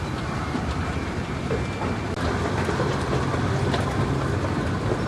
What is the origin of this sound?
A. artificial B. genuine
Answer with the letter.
B